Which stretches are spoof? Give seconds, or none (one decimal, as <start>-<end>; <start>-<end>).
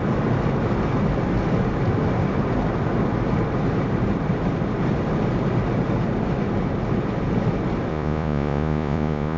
7.9-9.4